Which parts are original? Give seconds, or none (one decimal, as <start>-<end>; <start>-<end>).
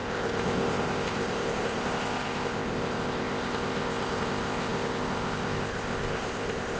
none